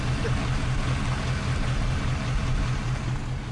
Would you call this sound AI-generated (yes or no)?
no